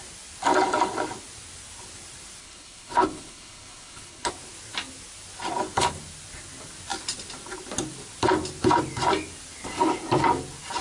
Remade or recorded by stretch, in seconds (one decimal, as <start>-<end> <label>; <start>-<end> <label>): 0.0-2.4 recorded; 2.4-4.3 remade; 4.3-10.8 recorded